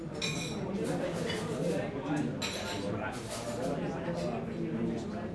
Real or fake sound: real